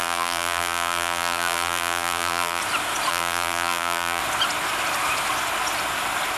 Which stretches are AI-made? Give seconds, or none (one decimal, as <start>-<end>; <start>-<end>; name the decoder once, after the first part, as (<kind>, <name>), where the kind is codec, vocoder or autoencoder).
0.0-2.6 (vocoder, BigVGAN v2); 3.1-4.2